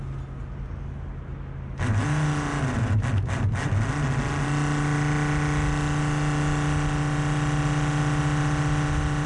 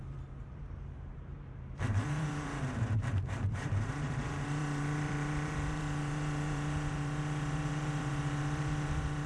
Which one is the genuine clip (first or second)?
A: first